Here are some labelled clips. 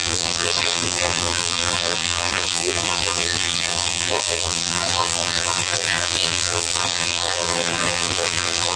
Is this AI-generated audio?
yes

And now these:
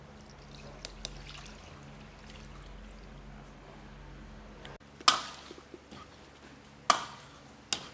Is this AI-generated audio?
no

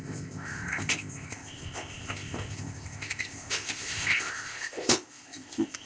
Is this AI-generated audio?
yes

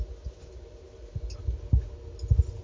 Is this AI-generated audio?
no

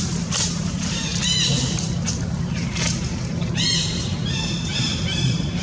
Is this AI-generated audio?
yes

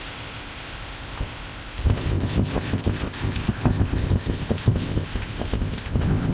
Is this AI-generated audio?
yes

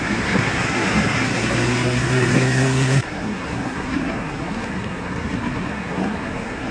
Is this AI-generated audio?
yes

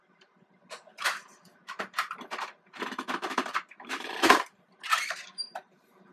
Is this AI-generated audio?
yes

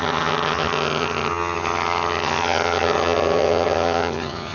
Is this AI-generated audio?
yes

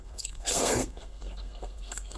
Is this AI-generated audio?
yes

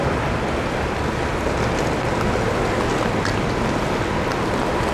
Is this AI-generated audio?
no